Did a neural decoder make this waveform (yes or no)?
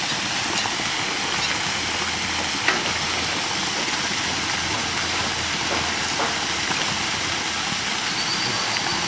no